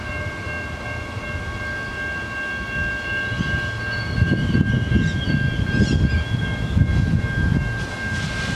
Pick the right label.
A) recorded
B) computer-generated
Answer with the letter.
A